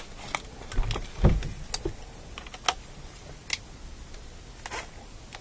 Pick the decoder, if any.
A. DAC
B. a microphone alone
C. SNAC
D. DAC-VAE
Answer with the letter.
B